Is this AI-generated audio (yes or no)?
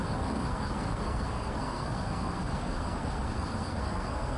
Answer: yes